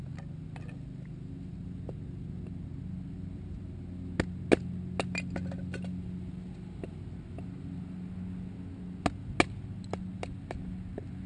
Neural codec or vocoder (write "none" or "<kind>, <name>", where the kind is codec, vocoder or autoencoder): none